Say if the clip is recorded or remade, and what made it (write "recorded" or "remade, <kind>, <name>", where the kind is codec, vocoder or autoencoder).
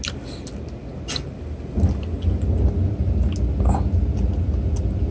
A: recorded